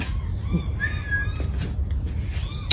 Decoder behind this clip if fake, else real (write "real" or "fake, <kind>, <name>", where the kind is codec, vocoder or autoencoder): real